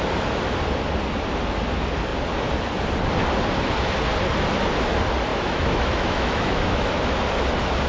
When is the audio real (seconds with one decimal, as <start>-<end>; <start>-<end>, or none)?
0.0-5.3; 6.9-7.9